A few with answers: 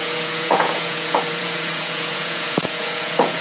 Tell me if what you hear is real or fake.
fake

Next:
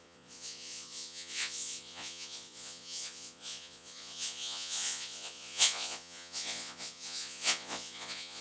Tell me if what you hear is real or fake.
fake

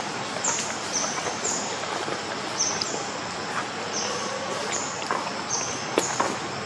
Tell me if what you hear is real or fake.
real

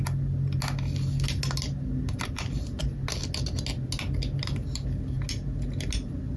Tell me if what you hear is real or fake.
real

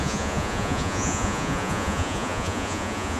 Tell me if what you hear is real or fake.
fake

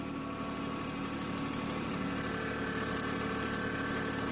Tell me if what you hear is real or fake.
real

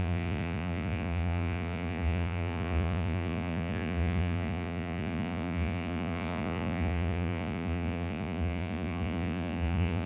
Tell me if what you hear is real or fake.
fake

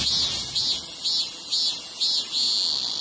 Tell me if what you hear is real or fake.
real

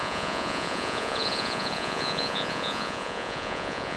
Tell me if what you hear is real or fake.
fake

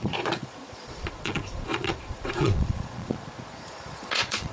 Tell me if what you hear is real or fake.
fake